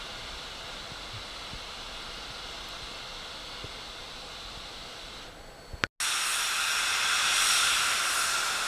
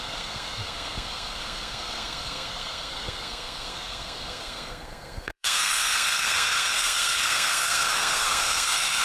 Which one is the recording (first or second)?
first